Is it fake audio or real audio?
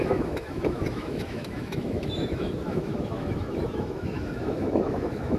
fake